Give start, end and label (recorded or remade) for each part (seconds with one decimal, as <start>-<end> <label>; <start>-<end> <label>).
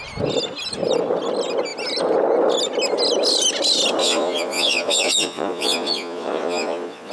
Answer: 0.0-4.0 recorded; 4.0-7.1 remade